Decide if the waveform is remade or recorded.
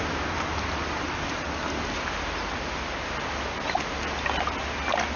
recorded